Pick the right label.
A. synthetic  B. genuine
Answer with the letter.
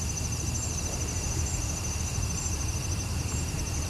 A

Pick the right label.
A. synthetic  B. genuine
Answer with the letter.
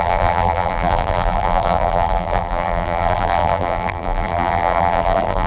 A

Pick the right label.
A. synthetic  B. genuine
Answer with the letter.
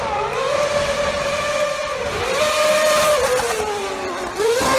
A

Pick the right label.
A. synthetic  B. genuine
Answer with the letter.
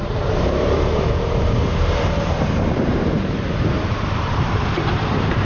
A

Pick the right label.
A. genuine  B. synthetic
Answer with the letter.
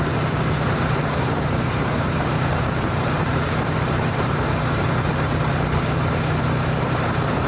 B